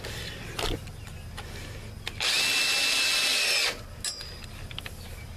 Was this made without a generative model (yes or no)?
yes